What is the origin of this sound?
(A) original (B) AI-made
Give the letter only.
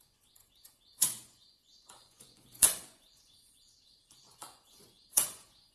B